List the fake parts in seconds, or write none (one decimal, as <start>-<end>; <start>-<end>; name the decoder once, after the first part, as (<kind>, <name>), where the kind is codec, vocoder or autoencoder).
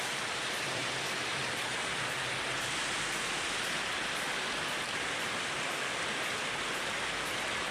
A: none